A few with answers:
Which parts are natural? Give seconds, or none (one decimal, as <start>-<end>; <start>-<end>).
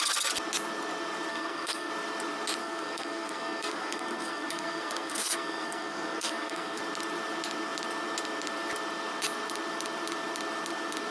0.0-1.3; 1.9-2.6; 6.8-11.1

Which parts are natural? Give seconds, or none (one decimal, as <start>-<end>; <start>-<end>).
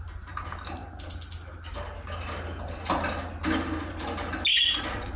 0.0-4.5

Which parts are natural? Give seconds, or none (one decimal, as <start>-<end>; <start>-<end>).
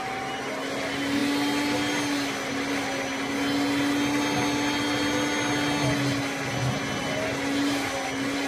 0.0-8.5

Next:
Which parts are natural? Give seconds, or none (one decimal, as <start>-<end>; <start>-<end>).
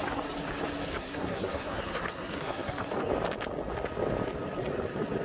0.0-0.9; 2.7-5.2